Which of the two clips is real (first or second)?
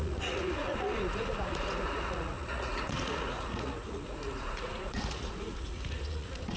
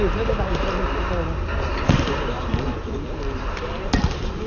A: second